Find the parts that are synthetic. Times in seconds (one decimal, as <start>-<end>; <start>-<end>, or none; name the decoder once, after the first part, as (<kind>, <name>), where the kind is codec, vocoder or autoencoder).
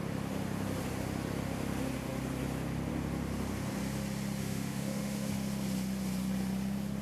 4.4-5.3 (autoencoder, DAC-VAE)